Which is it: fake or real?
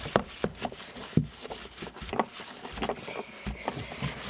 real